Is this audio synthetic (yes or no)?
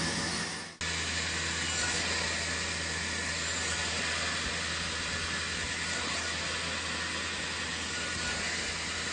no